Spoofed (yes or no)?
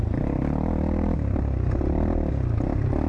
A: no